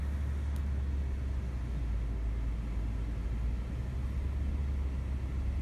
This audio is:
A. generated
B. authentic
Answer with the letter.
B